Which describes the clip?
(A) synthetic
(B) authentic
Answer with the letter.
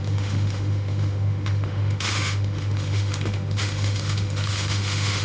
A